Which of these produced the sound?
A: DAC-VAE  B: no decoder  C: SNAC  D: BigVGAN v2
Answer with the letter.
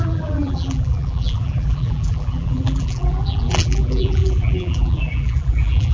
D